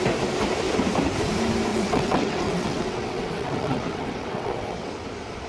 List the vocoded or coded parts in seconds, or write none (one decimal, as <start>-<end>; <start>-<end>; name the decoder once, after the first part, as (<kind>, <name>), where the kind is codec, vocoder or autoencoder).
1.7-4.9 (vocoder, WaveNeXt)